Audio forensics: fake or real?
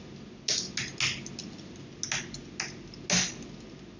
real